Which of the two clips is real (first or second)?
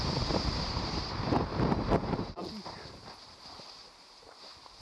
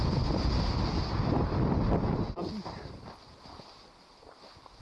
second